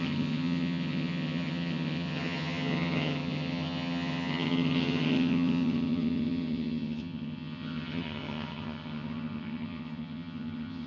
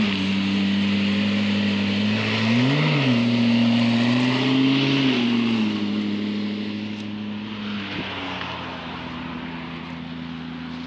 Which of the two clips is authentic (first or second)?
second